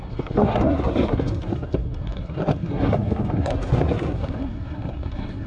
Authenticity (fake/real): fake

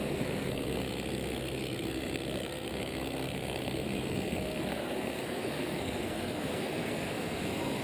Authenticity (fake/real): fake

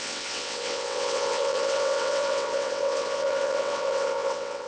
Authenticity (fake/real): fake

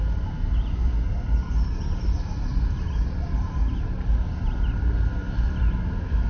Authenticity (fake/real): real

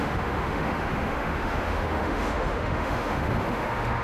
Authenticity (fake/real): fake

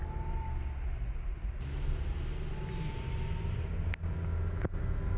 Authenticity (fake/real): real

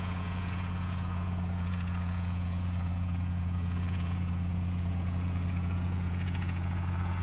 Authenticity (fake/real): fake